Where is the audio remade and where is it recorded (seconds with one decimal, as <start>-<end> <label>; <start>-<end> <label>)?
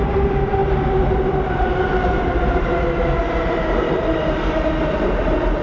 0.0-5.6 recorded